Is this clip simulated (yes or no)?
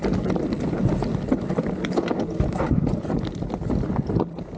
no